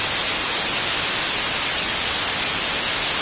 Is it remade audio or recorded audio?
recorded